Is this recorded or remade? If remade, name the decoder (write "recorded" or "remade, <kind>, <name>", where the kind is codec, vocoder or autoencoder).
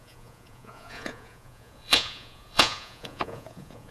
remade, vocoder, Vocos